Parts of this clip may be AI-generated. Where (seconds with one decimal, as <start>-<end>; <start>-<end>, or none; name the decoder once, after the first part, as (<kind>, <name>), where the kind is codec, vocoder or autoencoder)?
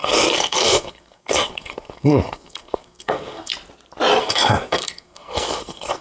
0.0-3.5 (codec, SNAC); 4.2-6.0